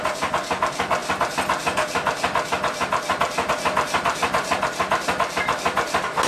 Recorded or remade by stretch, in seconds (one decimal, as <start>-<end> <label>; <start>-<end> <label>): 0.0-6.3 recorded